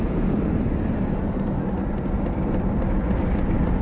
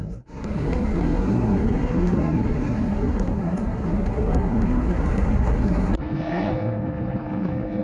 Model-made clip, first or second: second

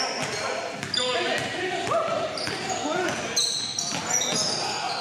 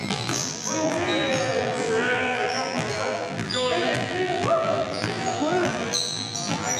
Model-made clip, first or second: second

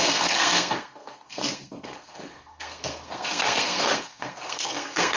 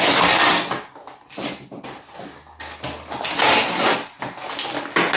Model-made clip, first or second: first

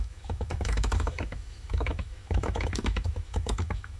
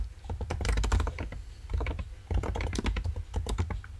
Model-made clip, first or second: first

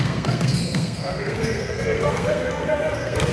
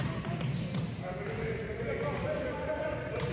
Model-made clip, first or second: first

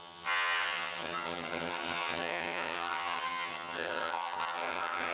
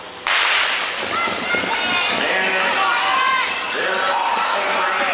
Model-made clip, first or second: first